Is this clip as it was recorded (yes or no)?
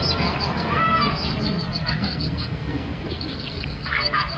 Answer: no